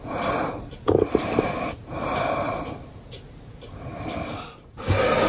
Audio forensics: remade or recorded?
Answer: recorded